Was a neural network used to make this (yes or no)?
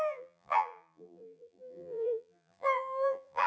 yes